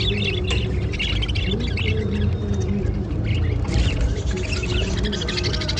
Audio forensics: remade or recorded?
recorded